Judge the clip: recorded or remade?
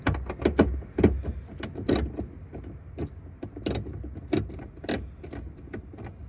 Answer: recorded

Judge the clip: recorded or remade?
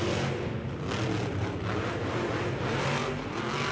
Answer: recorded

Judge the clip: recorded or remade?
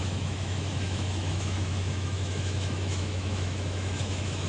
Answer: remade